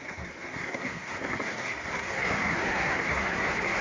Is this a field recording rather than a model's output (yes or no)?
no